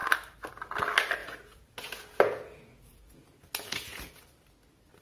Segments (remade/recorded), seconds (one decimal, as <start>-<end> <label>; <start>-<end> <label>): 0.0-1.2 recorded; 1.2-4.2 remade; 4.2-5.0 recorded